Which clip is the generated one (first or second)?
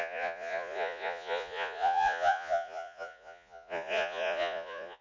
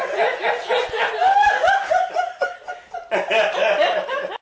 first